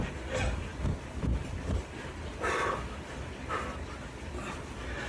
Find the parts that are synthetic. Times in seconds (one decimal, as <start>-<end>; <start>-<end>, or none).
none